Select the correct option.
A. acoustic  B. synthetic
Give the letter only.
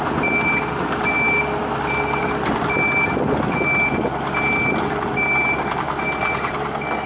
A